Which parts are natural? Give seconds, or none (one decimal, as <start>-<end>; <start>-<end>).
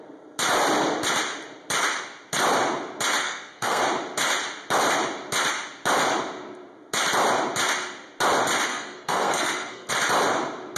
0.0-3.2; 3.8-8.7; 9.9-10.8